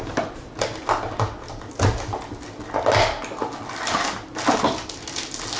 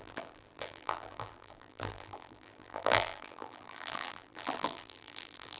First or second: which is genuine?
first